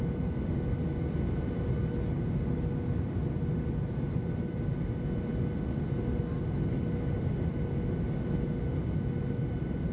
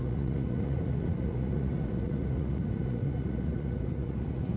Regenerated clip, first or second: second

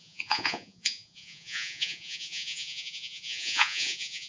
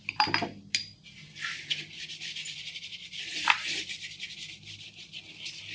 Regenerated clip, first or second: first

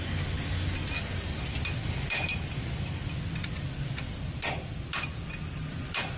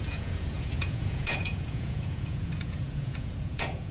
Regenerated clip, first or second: second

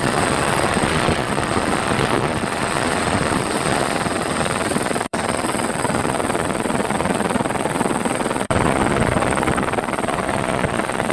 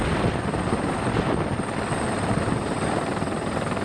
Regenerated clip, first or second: first